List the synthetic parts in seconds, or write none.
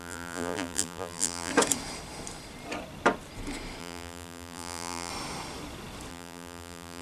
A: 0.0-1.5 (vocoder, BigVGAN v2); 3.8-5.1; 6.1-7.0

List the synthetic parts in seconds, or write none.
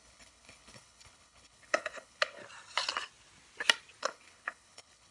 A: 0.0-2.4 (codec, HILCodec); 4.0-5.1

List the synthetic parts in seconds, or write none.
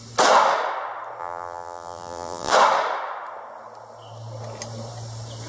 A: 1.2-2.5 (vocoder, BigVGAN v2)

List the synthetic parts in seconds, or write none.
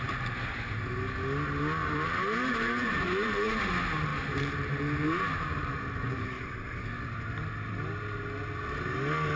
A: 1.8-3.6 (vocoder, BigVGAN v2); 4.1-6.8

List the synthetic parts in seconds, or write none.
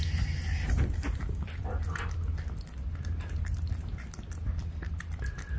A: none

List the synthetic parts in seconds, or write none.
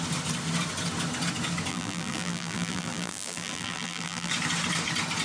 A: 1.7-4.3 (vocoder, BigVGAN v2)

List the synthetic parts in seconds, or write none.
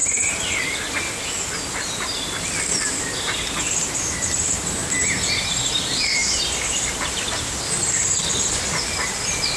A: 2.9-4.8 (vocoder, BigVGAN v2); 5.5-6.2; 8.5-9.6